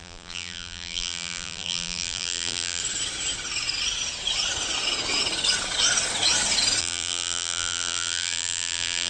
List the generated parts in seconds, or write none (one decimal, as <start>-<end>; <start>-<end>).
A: 0.0-2.8; 6.8-9.1